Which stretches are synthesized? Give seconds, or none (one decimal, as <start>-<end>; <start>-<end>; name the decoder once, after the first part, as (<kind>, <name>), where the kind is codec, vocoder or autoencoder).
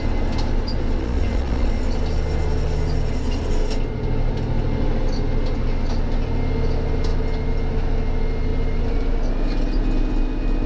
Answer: 1.0-1.7 (vocoder, Vocos)